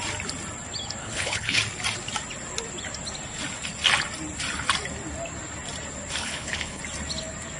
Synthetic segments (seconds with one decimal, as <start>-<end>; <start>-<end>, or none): 1.0-1.6; 6.2-6.8